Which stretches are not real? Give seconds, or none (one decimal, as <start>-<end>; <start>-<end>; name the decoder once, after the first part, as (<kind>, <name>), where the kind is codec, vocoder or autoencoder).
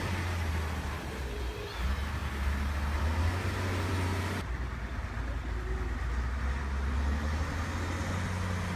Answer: none